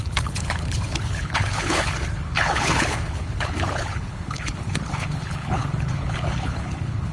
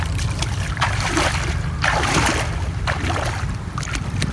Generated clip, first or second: first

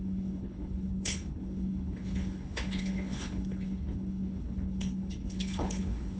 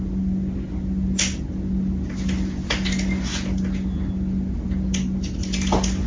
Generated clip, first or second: first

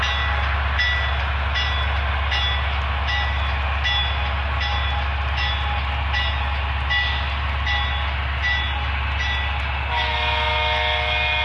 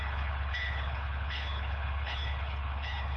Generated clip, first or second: second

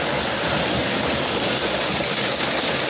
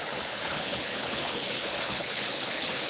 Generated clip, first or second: second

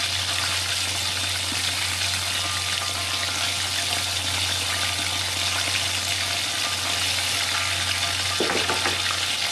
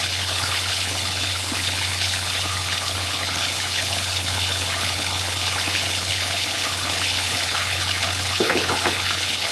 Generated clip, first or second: second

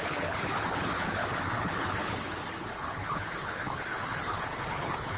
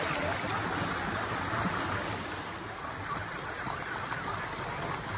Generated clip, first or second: first